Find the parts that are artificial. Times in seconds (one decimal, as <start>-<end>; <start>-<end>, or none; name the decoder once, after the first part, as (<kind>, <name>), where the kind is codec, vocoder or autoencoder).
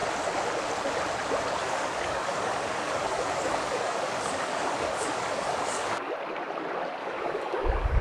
1.6-6.1 (codec, DAC); 7.0-8.0